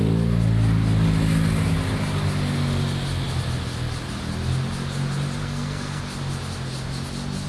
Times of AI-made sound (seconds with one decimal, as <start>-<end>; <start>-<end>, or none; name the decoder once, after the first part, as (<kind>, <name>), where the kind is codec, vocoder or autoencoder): 5.4-6.0 (codec, SNAC)